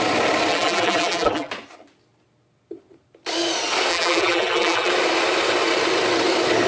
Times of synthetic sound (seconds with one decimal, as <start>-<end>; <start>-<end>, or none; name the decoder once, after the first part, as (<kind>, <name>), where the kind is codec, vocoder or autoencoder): 0.5-1.5 (vocoder, BigVGAN v2); 3.9-4.9